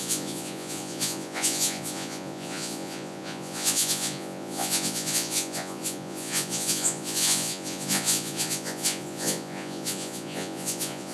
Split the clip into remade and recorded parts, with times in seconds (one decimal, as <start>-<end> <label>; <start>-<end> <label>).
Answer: 0.0-11.1 remade